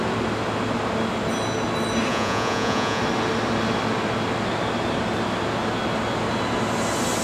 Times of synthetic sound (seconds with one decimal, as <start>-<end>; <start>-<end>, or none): 2.1-3.0